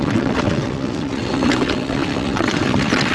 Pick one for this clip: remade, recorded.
remade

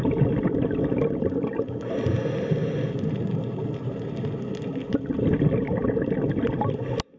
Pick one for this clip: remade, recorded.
recorded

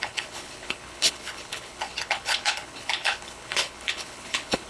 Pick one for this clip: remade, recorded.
remade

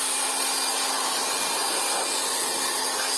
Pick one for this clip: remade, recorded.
recorded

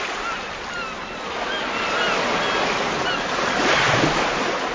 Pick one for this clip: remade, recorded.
recorded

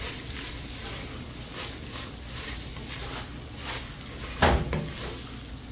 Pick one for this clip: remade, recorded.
recorded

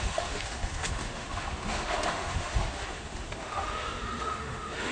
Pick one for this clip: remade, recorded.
remade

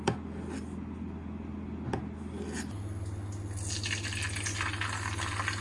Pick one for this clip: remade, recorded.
recorded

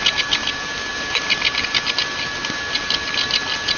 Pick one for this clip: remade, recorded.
recorded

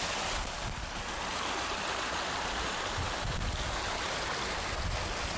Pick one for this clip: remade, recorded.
recorded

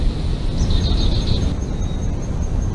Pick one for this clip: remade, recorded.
recorded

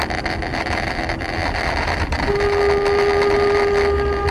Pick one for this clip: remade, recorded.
recorded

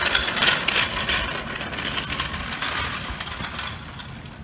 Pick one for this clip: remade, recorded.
recorded